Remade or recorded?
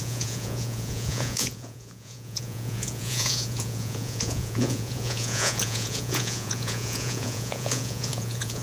remade